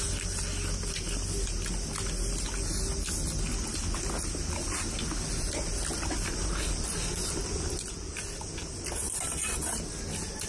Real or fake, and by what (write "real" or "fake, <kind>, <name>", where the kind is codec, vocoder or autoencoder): real